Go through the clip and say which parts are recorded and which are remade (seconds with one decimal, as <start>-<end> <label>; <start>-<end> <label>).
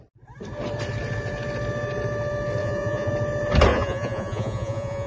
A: 0.0-2.6 recorded; 2.6-3.1 remade; 3.1-3.7 recorded; 3.7-5.1 remade